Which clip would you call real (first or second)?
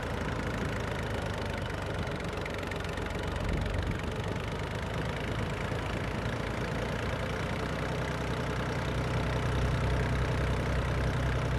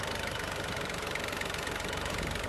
first